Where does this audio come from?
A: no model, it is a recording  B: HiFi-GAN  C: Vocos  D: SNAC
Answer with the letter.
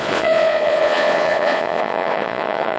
C